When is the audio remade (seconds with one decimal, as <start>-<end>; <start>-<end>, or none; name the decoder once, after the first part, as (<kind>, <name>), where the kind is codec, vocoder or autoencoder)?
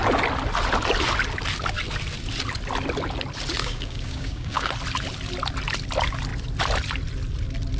3.6-4.7 (codec, DAC)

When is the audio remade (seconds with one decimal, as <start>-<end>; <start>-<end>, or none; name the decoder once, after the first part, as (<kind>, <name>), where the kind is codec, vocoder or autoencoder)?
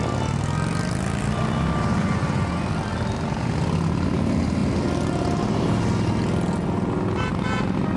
2.0-2.7 (vocoder, Vocos)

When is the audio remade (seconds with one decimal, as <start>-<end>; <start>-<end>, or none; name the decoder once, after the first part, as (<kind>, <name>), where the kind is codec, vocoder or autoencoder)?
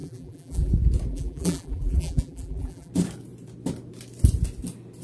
0.0-0.7 (vocoder, BigVGAN v2); 1.1-2.9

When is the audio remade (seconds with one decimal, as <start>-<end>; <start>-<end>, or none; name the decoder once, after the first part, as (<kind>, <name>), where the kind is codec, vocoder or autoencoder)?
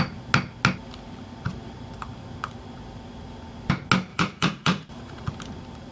4.1-5.3 (vocoder, Vocos)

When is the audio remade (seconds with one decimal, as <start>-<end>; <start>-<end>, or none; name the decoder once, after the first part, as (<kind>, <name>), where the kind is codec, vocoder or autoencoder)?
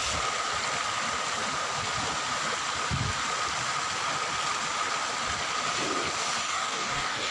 6.4-7.3 (codec, DAC)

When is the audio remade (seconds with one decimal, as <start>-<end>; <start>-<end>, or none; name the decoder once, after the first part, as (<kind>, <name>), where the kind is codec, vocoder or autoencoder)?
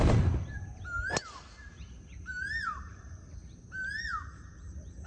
0.0-0.7 (vocoder, BigVGAN v2); 1.7-3.4; 4.5-5.1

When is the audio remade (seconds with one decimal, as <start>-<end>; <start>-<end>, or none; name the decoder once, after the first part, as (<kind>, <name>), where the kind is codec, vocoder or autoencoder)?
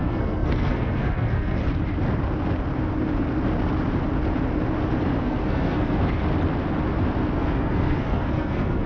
0.0-1.6 (codec, SNAC); 5.2-6.0; 7.3-8.9